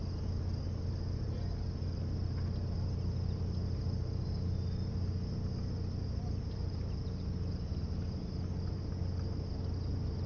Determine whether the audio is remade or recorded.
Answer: recorded